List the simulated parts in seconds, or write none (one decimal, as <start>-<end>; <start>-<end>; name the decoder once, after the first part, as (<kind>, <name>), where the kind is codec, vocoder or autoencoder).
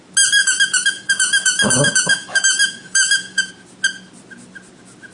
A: 0.4-3.5 (autoencoder, DAC-VAE)